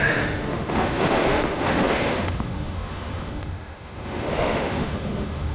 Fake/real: fake